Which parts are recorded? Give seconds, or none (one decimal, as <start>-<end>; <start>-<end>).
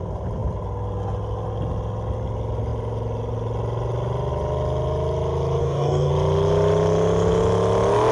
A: 0.0-5.6; 6.1-8.1